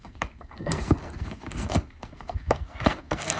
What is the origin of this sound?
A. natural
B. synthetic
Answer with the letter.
B